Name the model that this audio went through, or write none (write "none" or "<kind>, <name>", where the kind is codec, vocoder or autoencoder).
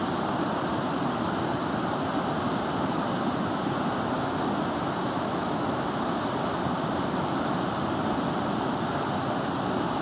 none